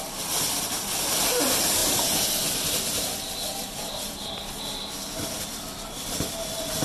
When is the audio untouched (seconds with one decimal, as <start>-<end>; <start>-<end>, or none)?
0.0-6.8